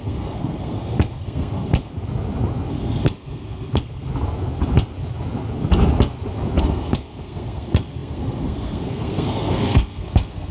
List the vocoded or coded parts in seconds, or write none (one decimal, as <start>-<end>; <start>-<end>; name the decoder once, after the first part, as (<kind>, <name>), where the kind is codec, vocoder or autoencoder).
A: 0.0-1.9 (codec, SNAC); 2.7-4.1; 6.6-10.5